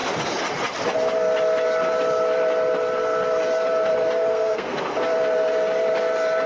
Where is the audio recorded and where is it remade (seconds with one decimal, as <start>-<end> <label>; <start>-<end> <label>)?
0.0-4.3 recorded; 4.3-4.8 remade; 4.8-6.5 recorded